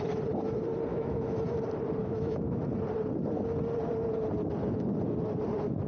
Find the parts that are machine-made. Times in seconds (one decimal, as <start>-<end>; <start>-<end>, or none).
0.9-1.4; 2.0-2.6

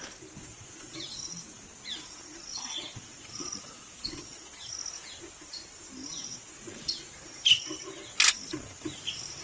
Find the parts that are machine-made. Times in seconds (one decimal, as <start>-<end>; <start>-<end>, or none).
0.5-1.4; 2.5-4.7; 6.1-7.1

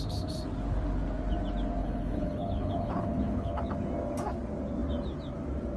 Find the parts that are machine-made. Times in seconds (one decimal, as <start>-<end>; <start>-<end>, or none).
1.8-3.7

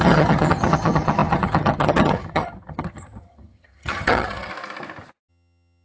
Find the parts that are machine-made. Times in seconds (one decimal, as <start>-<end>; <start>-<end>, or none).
0.0-4.5; 5.3-5.8

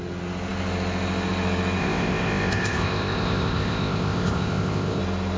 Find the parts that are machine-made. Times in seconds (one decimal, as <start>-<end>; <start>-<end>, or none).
1.8-5.0

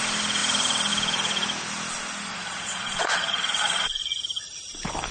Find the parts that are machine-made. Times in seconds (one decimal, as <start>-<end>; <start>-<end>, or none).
2.3-4.2

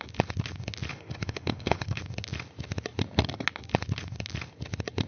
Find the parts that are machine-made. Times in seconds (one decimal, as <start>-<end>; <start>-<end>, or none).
0.9-2.0